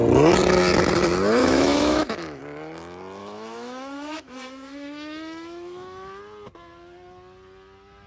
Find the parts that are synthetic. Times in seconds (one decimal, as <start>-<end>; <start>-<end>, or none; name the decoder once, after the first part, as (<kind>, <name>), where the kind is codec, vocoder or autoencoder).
1.4-2.4 (autoencoder, DAC-VAE); 3.2-6.2